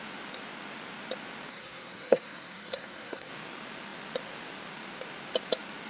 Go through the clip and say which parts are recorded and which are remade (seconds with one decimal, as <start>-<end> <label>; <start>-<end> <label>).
0.0-1.5 recorded; 1.5-3.3 remade; 3.3-5.9 recorded